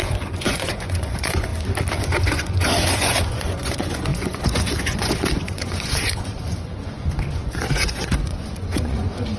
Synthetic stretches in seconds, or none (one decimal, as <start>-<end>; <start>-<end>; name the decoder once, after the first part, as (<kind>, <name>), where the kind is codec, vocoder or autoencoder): 0.0-1.5 (vocoder, Vocos); 2.0-9.4